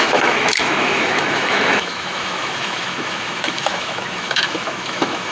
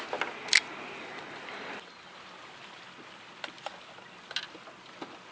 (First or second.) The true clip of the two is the second